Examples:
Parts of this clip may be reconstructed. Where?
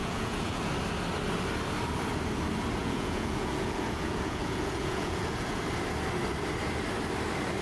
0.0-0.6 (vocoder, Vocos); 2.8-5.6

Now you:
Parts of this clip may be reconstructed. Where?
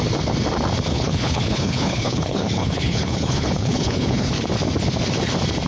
0.9-4.3 (codec, HILCodec)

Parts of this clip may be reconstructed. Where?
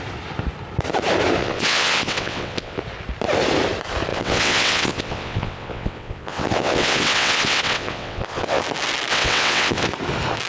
1.4-2.8 (vocoder, WaveNeXt); 4.1-8.6; 9.1-9.9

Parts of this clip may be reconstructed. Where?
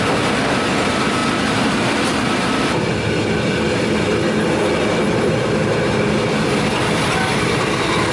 none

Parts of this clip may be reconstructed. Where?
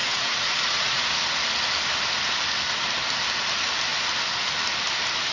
0.0-1.0 (vocoder, Vocos)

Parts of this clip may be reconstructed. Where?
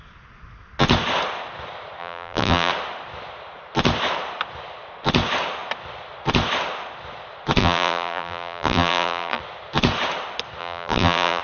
2.0-2.7 (vocoder, BigVGAN v2); 7.6-9.4; 10.6-11.4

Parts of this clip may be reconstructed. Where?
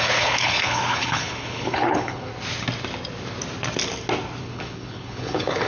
0.0-2.3 (codec, HILCodec); 4.4-5.7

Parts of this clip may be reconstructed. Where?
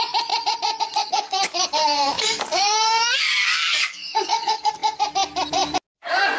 1.0-4.7 (codec, DAC)